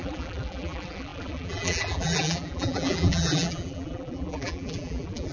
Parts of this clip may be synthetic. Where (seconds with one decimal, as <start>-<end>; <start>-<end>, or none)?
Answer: 0.0-5.3